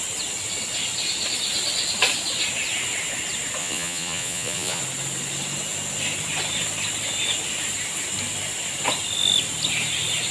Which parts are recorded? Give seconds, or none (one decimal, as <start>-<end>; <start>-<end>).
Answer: 0.0-3.6; 4.8-10.3

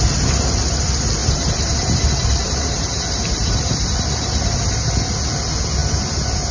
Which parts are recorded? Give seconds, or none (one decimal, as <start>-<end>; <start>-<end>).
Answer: 0.0-1.2; 4.9-6.5

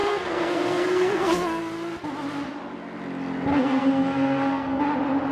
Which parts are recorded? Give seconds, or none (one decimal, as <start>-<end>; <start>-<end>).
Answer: 1.6-3.5; 4.8-5.3

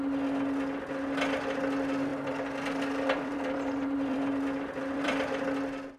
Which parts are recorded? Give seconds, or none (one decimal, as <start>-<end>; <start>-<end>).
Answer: 0.0-2.1; 5.3-6.0

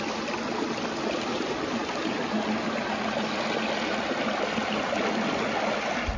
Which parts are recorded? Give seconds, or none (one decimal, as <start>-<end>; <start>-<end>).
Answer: 0.0-6.2

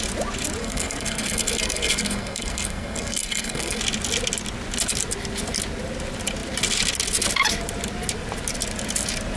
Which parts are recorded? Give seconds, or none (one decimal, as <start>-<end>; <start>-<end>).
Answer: 0.0-0.6; 3.8-9.4